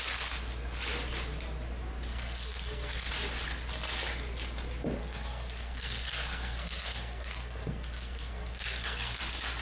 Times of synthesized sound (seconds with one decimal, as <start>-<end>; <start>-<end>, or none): 2.1-3.1; 5.0-9.2